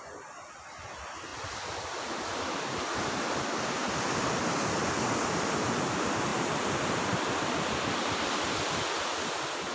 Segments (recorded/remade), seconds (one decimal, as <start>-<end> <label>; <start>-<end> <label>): 0.0-9.7 recorded